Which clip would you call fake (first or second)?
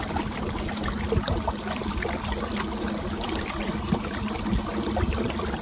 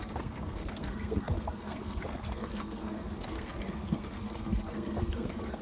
second